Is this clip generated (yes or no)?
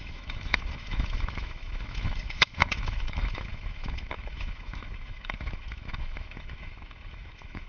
yes